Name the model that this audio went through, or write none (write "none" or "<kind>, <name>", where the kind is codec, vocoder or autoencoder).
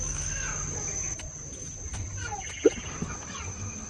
none